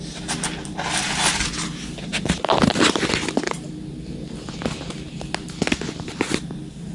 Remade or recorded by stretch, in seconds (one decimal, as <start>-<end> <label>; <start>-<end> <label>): 0.0-6.9 recorded